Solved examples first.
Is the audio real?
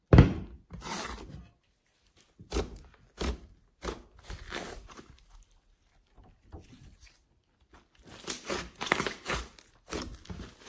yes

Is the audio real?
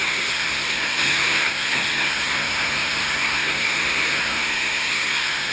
no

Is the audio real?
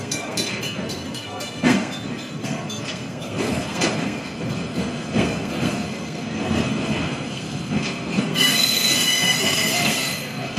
no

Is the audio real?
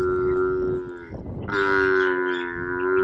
yes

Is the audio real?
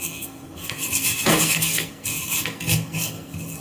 no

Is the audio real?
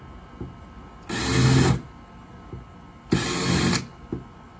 yes